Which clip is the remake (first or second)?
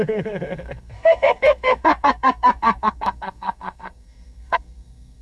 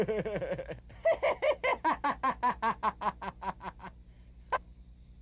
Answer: first